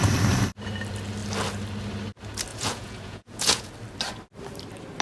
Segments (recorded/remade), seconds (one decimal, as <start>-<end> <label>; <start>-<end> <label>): 0.0-2.5 recorded; 2.5-3.7 remade; 3.7-5.0 recorded